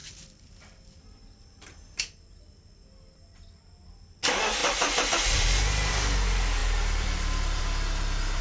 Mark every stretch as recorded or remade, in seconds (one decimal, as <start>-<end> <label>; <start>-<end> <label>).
0.0-2.0 remade; 2.0-6.6 recorded; 6.6-7.6 remade; 7.6-8.4 recorded